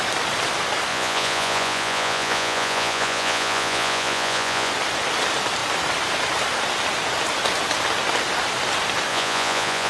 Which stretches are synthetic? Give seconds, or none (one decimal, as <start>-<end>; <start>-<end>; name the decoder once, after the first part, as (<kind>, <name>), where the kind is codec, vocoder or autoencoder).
0.9-4.7 (vocoder, Vocos); 9.1-9.9